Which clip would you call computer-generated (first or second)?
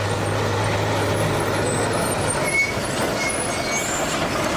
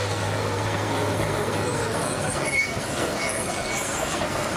second